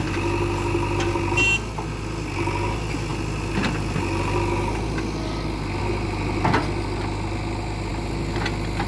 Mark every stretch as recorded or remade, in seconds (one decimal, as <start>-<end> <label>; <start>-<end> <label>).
0.0-8.9 recorded